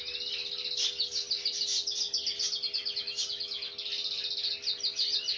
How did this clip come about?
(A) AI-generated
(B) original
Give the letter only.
B